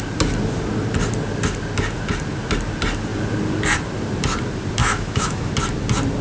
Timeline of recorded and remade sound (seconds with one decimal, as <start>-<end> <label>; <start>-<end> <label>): 0.0-4.8 recorded; 4.8-5.5 remade; 5.5-6.2 recorded